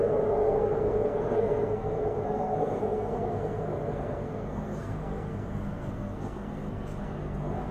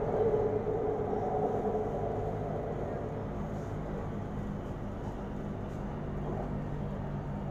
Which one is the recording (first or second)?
second